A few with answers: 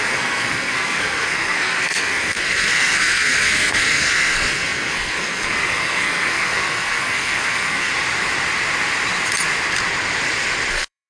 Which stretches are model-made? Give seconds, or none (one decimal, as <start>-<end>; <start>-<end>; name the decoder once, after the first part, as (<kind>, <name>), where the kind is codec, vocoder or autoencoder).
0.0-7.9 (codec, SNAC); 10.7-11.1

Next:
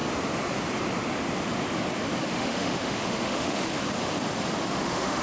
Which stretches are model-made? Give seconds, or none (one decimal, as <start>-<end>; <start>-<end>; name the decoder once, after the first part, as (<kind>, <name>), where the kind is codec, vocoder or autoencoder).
2.3-3.7 (autoencoder, DAC-VAE); 4.7-5.2

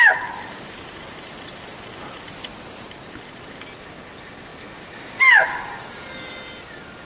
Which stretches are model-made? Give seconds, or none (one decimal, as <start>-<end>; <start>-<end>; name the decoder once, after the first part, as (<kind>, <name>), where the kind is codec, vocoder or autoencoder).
none